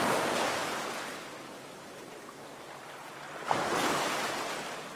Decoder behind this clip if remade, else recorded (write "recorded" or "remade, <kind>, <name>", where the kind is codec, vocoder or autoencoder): recorded